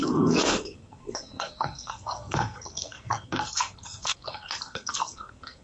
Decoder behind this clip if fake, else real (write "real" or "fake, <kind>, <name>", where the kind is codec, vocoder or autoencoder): fake, codec, SNAC